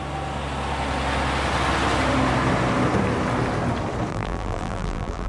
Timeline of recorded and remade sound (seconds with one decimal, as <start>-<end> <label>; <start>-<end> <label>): 0.0-4.1 recorded; 4.1-5.3 remade